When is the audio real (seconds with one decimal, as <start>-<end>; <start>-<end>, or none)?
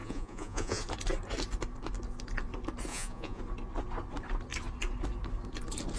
0.8-2.9; 3.4-6.0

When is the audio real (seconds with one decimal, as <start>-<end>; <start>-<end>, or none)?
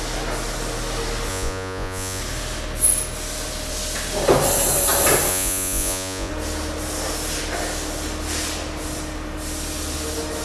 0.0-1.3; 2.2-5.3; 6.3-10.4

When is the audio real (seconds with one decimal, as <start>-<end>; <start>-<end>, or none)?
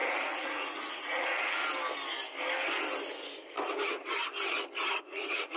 1.6-5.0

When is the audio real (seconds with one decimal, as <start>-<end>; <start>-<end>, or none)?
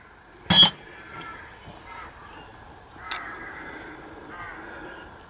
0.0-5.3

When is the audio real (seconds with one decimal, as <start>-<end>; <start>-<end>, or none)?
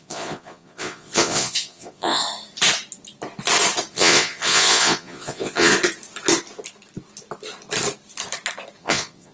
2.2-3.9; 5.7-8.8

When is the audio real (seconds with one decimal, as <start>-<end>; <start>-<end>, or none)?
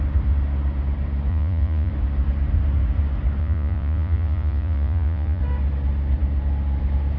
0.0-1.3; 1.9-3.4; 5.4-7.2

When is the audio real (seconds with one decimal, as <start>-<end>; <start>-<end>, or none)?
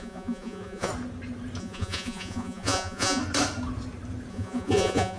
0.9-1.6; 3.2-4.3